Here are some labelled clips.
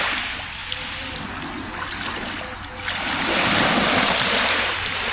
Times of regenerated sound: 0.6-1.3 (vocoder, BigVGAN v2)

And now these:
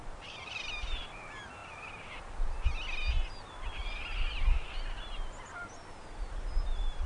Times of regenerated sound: 0.0-0.6 (vocoder, BigVGAN v2); 3.8-5.0

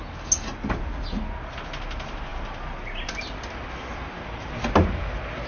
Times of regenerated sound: 3.9-4.5 (vocoder, BigVGAN v2)

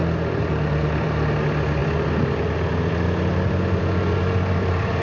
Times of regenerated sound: 0.0-1.4 (vocoder, BigVGAN v2)

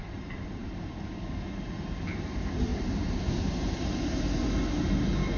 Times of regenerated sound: 2.7-4.2 (vocoder, BigVGAN v2)

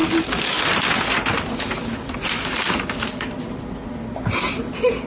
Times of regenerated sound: none

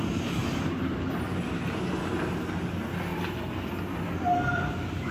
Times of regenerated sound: none

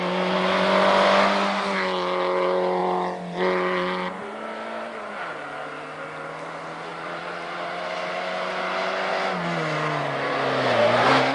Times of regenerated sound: 6.9-7.7 (vocoder, BigVGAN v2)